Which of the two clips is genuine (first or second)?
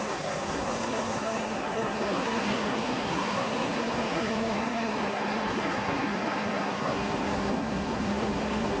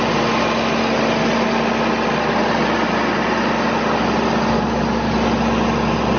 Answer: second